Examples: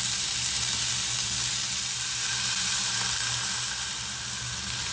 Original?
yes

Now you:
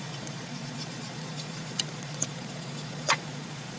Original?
no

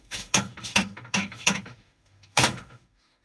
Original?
no